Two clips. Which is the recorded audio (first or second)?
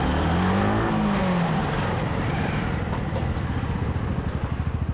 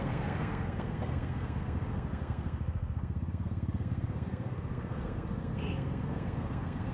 first